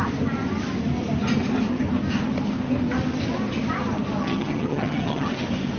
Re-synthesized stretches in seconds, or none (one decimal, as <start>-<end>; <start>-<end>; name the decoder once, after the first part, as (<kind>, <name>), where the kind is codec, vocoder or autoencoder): 4.2-5.3 (vocoder, HiFi-GAN)